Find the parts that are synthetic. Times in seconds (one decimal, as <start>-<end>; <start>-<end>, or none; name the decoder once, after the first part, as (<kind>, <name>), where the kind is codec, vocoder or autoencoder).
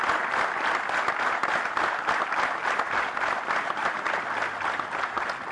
none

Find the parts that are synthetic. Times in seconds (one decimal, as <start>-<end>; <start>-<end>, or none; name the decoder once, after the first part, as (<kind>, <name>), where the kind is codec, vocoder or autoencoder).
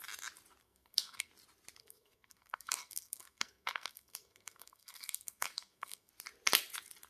0.6-1.3 (codec, SNAC); 1.8-6.1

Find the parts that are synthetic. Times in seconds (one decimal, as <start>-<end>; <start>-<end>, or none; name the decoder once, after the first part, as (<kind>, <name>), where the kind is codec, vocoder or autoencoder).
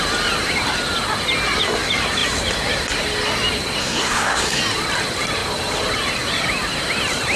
3.8-4.6 (codec, SNAC)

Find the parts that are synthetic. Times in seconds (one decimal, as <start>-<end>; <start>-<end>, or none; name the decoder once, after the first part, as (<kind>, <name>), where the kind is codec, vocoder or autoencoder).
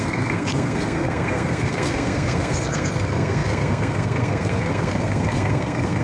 0.0-6.0 (codec, SNAC)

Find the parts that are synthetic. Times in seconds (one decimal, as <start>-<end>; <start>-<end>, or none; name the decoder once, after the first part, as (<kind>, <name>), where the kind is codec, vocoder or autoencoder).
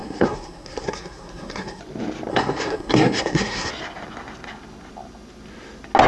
0.0-1.8 (codec, SNAC); 2.3-3.7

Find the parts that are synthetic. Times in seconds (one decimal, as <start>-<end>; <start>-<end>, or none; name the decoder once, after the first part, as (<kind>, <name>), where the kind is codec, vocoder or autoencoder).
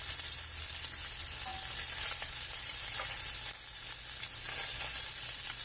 none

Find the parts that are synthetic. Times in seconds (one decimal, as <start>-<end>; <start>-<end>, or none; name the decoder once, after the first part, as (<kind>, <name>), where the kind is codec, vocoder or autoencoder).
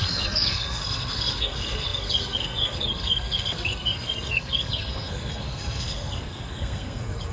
0.0-7.3 (codec, SNAC)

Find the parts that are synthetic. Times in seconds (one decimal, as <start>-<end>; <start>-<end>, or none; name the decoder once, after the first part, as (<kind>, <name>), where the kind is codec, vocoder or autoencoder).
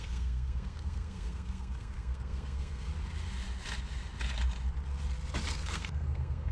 0.0-2.9 (codec, SNAC); 5.5-6.5